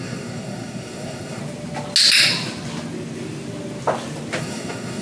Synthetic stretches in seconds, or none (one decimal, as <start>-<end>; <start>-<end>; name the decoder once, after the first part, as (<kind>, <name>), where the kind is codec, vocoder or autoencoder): 0.0-1.4 (codec, SNAC); 4.4-5.0

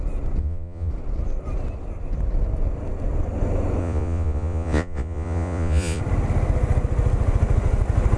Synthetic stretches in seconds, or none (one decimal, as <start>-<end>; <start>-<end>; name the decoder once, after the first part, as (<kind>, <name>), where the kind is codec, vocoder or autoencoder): 0.4-0.9 (vocoder, Vocos); 3.8-6.0

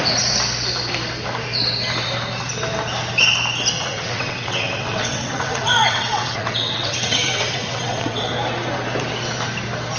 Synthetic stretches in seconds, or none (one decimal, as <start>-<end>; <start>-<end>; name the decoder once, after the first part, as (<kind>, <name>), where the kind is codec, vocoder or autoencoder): 3.8-8.3 (vocoder, WaveNeXt)